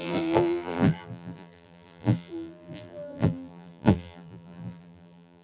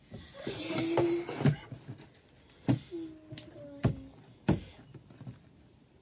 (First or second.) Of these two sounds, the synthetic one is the first